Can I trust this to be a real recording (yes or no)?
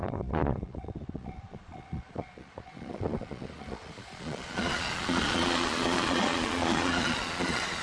no